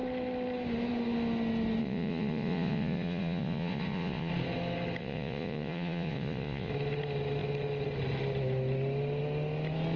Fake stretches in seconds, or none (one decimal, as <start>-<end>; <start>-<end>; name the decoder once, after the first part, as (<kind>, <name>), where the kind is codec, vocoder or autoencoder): 1.8-4.3 (vocoder, Vocos); 5.0-6.7